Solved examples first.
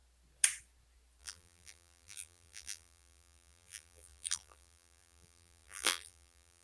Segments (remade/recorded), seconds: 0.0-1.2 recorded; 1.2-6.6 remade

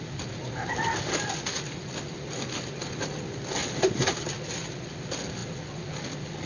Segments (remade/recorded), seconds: 0.0-3.6 recorded; 3.6-4.3 remade; 4.3-6.5 recorded

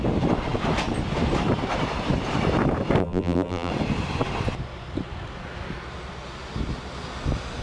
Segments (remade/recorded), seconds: 0.0-3.0 recorded; 3.0-3.7 remade; 3.7-7.6 recorded